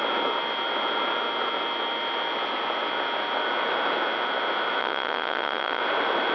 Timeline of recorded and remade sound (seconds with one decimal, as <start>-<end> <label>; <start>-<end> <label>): 0.0-4.8 recorded; 4.8-5.8 remade; 5.8-6.3 recorded